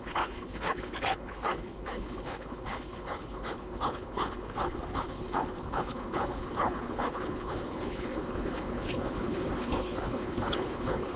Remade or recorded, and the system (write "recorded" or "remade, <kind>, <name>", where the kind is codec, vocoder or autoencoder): remade, codec, HILCodec